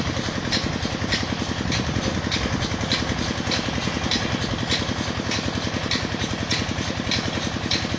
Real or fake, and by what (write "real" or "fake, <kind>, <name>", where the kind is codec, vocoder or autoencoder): real